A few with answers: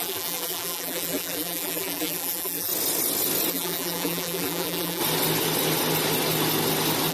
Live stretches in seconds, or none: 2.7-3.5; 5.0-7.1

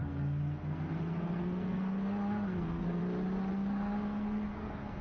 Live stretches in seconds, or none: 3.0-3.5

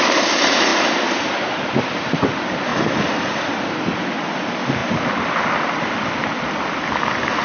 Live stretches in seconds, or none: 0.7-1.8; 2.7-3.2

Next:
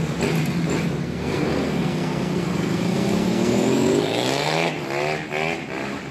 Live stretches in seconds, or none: 0.0-1.0; 4.7-6.1

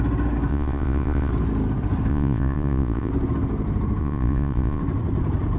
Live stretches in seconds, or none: 0.0-0.5; 1.3-2.1; 3.1-4.0; 4.8-5.6

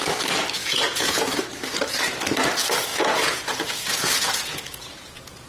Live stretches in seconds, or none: 0.0-0.6; 1.4-2.9

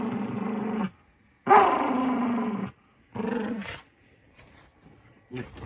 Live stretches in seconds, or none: 0.8-1.5